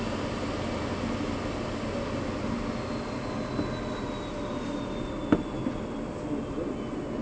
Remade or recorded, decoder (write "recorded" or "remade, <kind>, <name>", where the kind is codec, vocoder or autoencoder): recorded